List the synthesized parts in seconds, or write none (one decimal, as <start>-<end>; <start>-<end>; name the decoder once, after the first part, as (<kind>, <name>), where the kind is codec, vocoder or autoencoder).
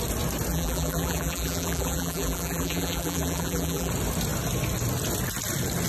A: 0.5-3.9 (vocoder, BigVGAN v2)